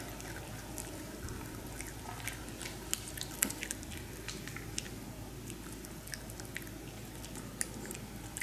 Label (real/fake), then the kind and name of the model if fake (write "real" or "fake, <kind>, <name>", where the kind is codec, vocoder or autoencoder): real